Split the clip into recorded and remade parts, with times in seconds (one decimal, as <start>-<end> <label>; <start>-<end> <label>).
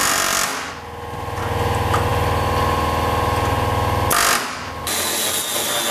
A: 0.0-5.9 recorded